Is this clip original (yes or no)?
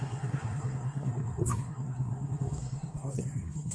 no